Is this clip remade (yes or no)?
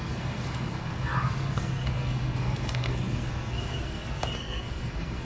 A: yes